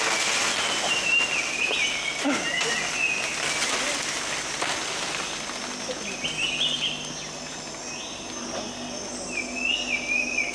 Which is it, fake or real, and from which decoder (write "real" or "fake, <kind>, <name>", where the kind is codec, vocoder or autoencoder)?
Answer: real